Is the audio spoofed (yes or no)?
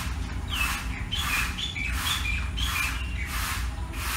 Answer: no